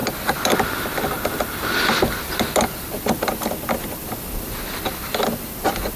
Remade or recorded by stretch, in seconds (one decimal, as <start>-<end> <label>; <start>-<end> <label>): 0.0-6.0 recorded

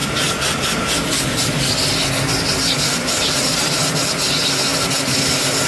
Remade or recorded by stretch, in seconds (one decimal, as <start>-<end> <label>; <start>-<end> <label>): 0.0-5.7 recorded

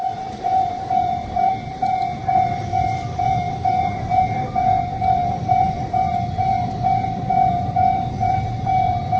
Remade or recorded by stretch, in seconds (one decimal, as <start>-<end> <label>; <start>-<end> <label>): 0.0-9.2 remade

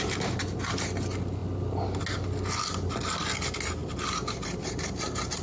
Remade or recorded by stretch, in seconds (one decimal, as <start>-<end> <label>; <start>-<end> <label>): 0.0-3.8 recorded; 3.8-5.4 remade